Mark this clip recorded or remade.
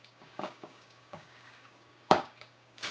remade